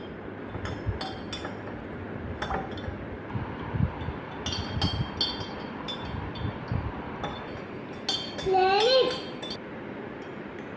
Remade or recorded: recorded